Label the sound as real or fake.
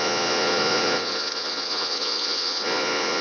fake